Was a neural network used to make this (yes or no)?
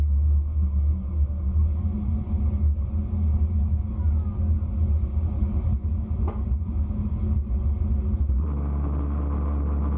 no